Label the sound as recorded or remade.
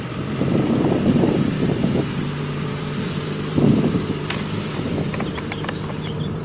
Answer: remade